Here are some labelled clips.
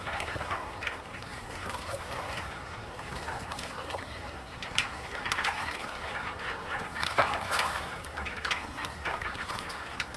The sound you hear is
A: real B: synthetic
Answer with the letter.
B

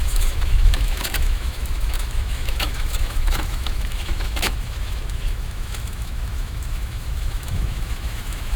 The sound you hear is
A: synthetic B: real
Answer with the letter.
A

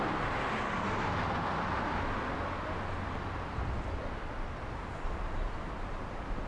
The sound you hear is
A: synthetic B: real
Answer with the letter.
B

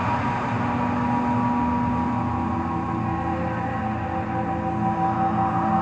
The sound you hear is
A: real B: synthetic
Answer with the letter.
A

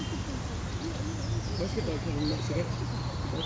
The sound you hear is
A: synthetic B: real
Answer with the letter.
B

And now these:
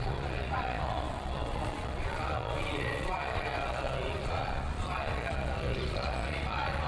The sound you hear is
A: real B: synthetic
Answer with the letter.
B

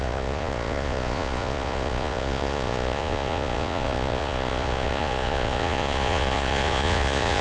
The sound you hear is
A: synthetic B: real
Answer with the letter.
A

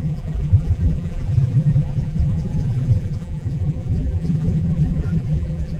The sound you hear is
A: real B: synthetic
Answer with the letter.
B